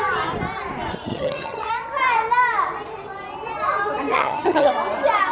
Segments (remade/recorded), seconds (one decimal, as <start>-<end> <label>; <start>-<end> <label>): 0.0-1.1 recorded; 1.1-1.7 remade; 1.7-4.1 recorded; 4.1-4.7 remade; 4.7-5.3 recorded